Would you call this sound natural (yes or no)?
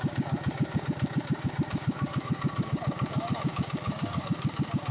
no